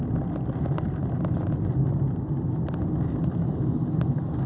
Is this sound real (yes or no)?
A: yes